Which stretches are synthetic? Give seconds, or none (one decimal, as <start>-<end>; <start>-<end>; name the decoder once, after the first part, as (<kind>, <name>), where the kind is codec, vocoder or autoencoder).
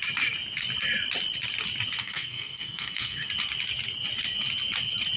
2.0-3.3 (codec, SNAC)